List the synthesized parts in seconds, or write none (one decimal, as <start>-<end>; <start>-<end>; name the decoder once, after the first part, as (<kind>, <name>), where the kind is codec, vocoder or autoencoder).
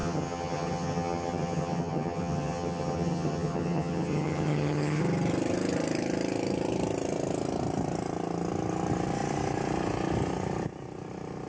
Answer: 0.0-5.0 (vocoder, HiFi-GAN)